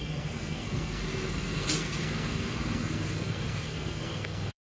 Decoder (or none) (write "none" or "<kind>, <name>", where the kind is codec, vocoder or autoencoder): codec, SNAC